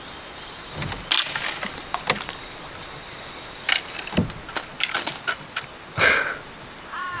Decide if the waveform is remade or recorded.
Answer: recorded